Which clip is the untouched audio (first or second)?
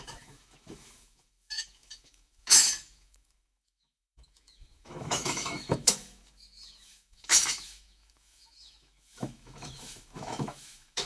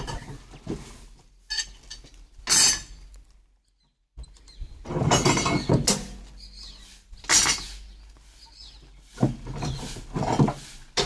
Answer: second